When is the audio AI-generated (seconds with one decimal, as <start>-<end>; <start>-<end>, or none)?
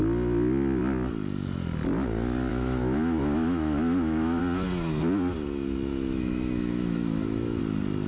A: 2.5-4.4; 5.9-7.6